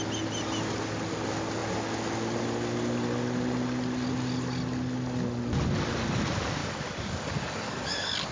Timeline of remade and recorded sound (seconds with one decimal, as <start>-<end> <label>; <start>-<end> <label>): 0.0-6.6 recorded; 6.6-8.3 remade